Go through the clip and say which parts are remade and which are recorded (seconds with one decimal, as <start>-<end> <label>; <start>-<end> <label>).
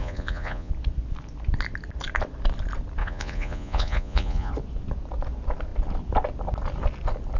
0.0-0.7 remade; 0.7-3.0 recorded; 3.0-4.5 remade; 4.5-7.4 recorded